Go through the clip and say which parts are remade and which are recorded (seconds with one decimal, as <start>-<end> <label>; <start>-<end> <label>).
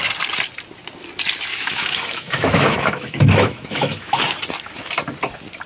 0.0-1.5 recorded; 1.5-4.2 remade; 4.2-5.7 recorded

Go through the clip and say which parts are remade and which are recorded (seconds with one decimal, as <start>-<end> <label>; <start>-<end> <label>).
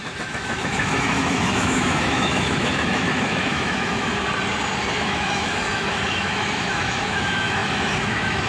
0.0-4.1 remade; 4.1-4.9 recorded; 4.9-8.5 remade